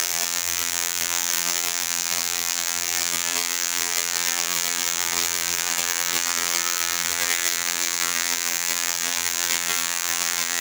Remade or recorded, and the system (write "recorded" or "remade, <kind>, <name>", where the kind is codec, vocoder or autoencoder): remade, vocoder, BigVGAN v2